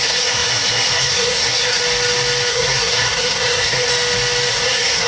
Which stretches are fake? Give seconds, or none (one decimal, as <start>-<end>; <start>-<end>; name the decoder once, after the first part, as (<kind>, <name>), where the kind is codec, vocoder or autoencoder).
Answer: 0.0-1.8 (codec, SNAC); 2.5-3.9; 4.5-5.1